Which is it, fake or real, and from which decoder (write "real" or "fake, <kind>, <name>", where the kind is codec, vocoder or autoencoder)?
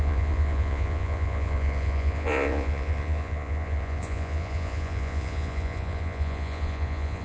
fake, vocoder, Vocos